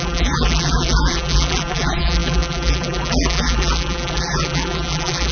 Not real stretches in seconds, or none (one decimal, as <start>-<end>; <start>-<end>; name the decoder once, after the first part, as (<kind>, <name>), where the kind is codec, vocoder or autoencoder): 0.0-5.3 (vocoder, BigVGAN v2)